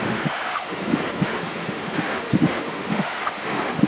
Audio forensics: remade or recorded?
remade